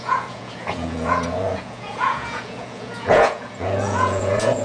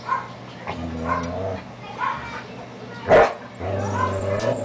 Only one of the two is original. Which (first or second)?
second